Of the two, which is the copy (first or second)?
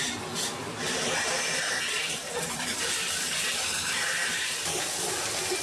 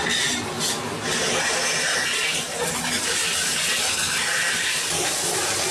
first